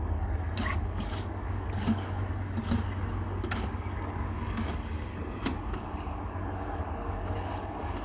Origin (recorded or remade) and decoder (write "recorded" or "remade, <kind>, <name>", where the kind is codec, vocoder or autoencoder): remade, codec, DAC